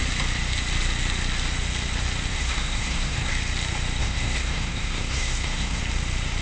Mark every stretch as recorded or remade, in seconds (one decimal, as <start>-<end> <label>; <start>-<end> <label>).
0.0-2.3 recorded; 2.3-3.3 remade; 3.3-4.0 recorded; 4.0-5.8 remade; 5.8-6.4 recorded